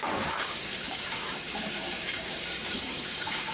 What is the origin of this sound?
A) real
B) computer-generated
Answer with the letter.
B